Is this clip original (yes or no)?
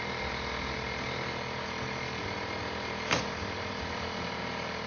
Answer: yes